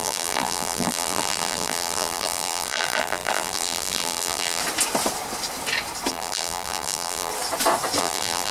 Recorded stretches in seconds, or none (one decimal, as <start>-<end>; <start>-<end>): 4.6-6.1; 7.3-8.0